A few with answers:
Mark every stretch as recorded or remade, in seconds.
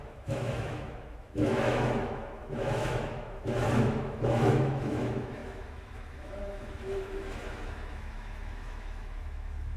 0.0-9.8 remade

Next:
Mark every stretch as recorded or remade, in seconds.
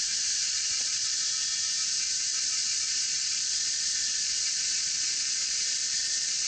0.0-0.4 recorded; 0.4-1.3 remade; 1.3-2.3 recorded; 2.3-6.5 remade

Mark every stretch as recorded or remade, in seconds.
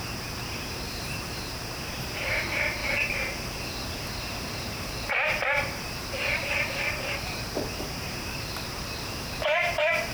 0.0-2.8 remade; 2.8-4.1 recorded; 4.1-10.1 remade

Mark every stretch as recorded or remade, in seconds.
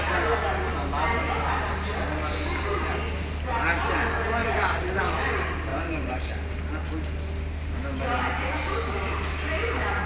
0.0-4.4 recorded; 4.4-5.0 remade; 5.0-5.7 recorded; 5.7-6.3 remade; 6.3-10.1 recorded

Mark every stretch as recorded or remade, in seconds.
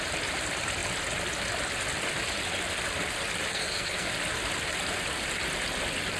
0.0-3.5 recorded; 3.5-4.1 remade; 4.1-6.2 recorded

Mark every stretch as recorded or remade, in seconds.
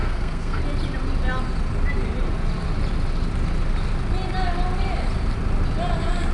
0.0-0.6 remade; 0.6-6.3 recorded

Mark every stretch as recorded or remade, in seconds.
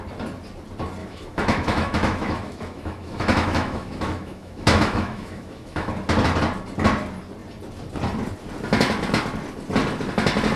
0.0-1.0 recorded; 1.0-5.9 remade; 5.9-10.6 recorded